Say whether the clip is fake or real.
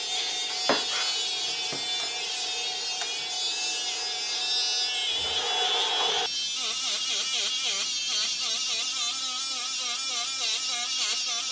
real